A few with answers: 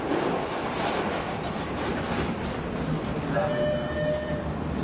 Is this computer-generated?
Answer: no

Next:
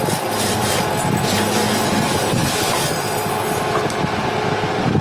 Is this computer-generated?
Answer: no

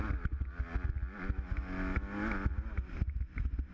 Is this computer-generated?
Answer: no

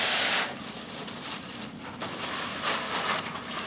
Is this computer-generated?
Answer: no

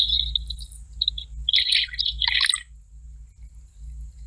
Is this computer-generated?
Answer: no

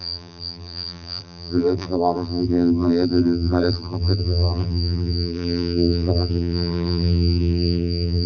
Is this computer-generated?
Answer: yes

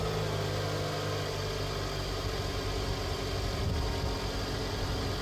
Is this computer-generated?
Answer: no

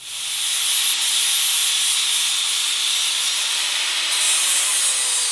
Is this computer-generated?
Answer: no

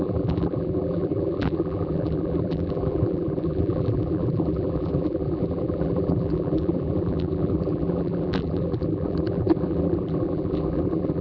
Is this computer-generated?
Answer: yes